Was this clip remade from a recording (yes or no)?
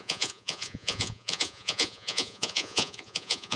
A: yes